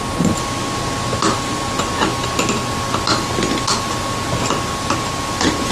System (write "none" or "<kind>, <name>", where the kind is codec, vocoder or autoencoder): none